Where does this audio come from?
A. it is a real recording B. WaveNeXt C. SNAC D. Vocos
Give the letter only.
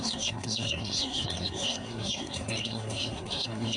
C